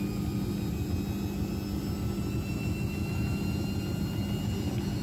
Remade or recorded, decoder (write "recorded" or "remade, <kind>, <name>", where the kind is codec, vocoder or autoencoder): recorded